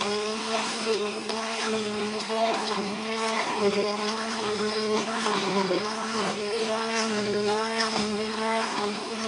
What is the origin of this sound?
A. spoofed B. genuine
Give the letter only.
A